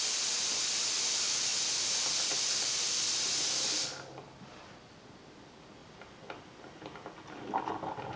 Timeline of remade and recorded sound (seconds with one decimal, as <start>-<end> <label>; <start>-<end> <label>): 0.0-8.2 recorded